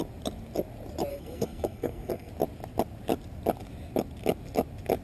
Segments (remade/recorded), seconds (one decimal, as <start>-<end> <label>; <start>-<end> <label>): 0.0-1.1 recorded; 1.1-2.3 remade; 2.3-5.0 recorded